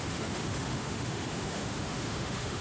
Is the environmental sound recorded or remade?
remade